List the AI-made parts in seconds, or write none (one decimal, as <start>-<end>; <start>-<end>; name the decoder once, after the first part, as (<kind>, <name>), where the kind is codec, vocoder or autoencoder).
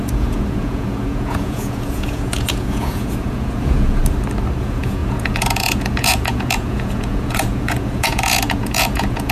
0.0-4.0 (vocoder, Vocos); 4.6-9.3